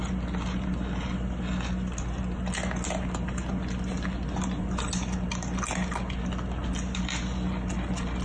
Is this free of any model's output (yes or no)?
yes